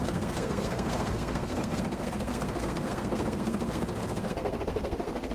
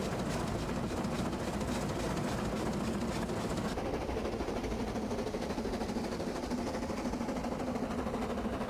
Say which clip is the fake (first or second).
first